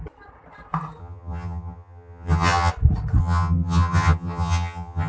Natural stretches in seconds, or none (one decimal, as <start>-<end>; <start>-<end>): 0.0-1.0; 2.7-3.2

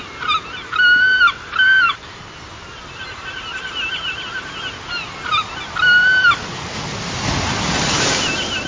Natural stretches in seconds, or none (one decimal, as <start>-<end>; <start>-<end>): 0.0-8.7

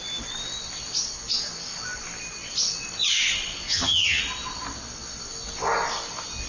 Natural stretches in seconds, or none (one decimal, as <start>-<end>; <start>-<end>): 0.0-3.7; 4.2-6.5

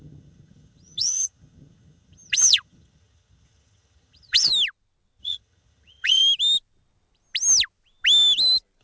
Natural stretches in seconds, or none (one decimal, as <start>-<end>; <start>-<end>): 4.5-5.2; 6.2-8.8

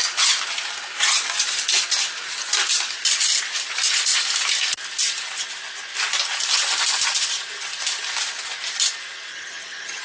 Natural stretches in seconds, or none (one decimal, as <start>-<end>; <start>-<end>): 0.0-9.3

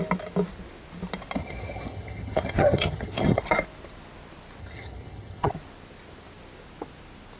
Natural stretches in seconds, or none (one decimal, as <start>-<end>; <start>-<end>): 0.0-1.4; 3.4-4.6; 5.5-7.4

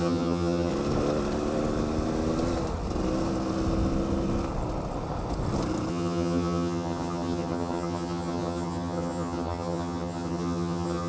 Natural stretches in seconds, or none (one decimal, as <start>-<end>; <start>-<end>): 0.7-5.9

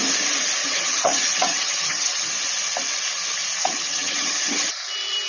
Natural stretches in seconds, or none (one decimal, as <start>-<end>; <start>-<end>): 0.0-0.6; 2.3-3.6; 4.7-5.3